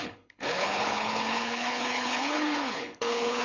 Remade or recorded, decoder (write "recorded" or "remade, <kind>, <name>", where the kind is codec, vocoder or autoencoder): remade, codec, HILCodec